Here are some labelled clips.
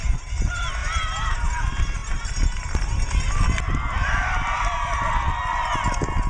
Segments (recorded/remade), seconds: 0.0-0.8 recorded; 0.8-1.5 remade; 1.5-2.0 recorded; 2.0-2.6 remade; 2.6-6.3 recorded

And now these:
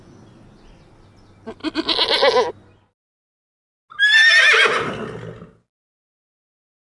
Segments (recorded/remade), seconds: 0.0-6.9 recorded